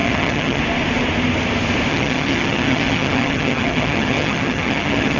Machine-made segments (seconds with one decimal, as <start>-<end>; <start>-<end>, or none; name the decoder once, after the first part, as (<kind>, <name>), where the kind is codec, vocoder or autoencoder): 0.0-0.6 (vocoder, HiFi-GAN); 1.9-5.2